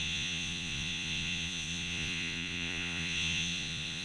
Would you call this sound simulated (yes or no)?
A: yes